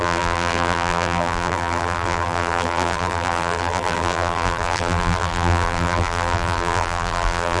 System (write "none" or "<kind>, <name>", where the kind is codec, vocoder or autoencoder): vocoder, BigVGAN v2